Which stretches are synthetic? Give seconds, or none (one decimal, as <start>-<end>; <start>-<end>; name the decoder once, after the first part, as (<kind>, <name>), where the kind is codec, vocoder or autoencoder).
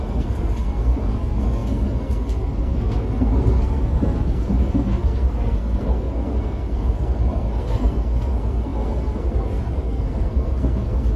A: 0.0-11.2 (codec, SNAC)